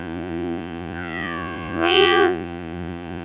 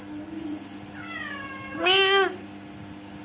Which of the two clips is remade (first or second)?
first